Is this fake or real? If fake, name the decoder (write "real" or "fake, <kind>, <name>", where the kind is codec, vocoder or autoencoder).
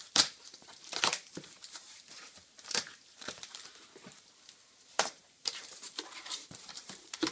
fake, vocoder, BigVGAN v2